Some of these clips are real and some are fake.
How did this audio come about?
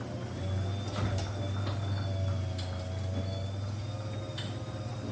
real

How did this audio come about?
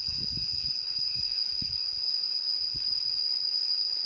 fake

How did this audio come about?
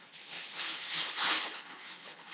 fake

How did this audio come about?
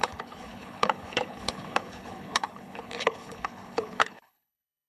fake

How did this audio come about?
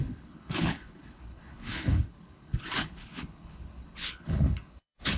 fake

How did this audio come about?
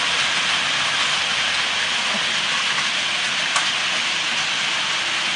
real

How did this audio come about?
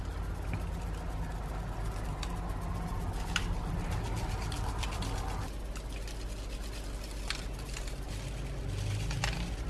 real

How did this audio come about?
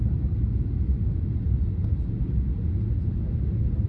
real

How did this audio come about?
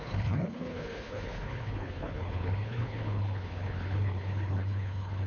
fake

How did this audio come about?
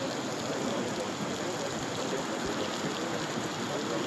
real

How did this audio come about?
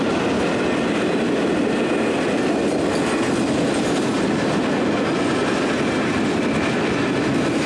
real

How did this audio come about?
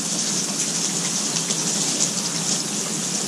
real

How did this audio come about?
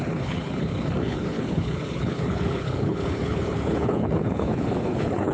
fake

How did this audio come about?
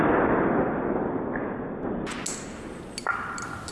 real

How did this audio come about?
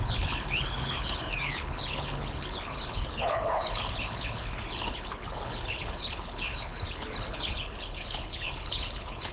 fake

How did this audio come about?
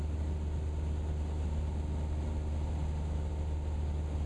real